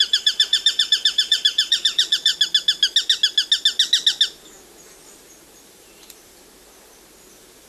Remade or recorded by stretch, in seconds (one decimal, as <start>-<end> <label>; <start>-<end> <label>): 0.0-2.3 remade; 2.3-4.6 recorded; 4.6-7.7 remade